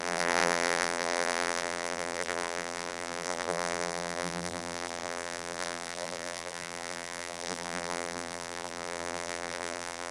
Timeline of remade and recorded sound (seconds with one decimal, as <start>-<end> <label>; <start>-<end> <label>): 0.0-10.1 remade